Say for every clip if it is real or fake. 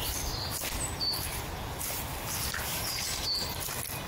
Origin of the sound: real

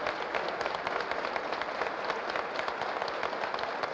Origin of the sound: real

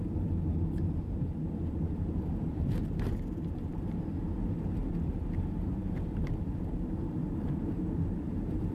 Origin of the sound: fake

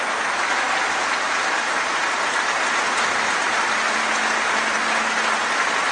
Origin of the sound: real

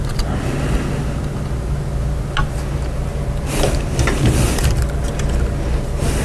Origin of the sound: real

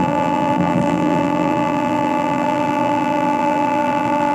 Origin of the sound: fake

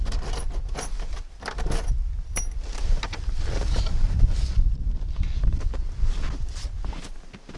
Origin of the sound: fake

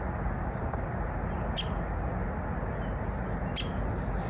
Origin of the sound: real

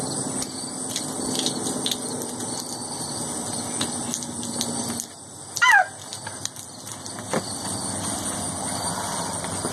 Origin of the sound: real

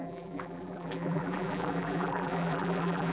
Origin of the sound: fake